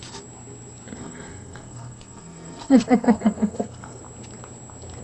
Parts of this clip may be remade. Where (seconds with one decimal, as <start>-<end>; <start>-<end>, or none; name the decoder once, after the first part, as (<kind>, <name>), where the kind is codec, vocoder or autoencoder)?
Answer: 1.0-4.0 (codec, SNAC)